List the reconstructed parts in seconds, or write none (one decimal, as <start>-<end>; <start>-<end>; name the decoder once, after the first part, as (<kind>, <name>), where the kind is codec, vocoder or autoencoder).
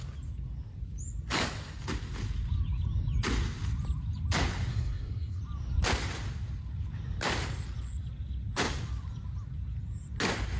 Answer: 4.7-5.4 (codec, SNAC)